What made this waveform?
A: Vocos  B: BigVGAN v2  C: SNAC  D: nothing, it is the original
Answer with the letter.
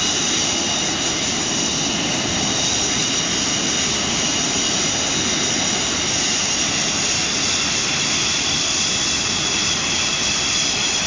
D